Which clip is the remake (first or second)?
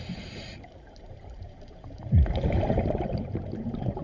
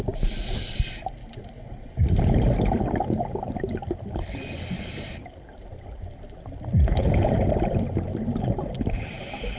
first